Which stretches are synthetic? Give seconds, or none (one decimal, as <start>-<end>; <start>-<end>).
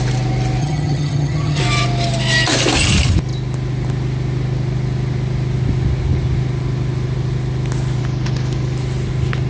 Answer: 0.6-1.6